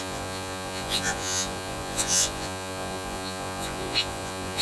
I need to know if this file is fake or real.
fake